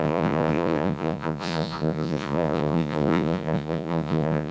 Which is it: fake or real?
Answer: fake